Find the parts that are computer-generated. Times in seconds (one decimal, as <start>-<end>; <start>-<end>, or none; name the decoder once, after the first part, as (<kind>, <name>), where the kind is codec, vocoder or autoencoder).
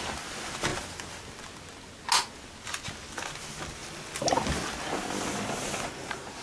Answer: none